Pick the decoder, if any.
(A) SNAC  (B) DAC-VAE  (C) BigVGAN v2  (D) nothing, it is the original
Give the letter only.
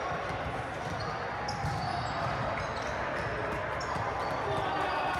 D